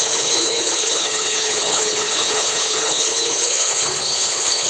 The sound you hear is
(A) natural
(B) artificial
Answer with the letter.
B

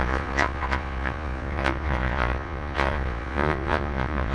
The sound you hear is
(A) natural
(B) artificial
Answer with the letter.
B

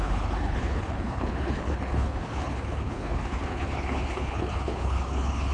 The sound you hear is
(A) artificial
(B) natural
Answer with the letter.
A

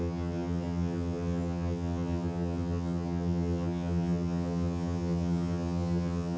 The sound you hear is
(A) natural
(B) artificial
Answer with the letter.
B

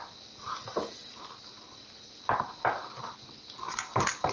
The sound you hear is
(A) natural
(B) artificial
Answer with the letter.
A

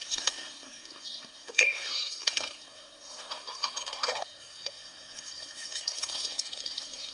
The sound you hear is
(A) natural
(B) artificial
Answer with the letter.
B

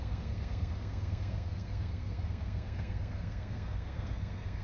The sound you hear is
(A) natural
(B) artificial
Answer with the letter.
B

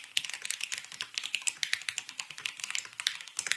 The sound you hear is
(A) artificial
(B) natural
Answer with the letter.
B